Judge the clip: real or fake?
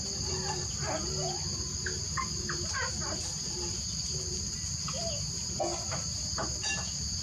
real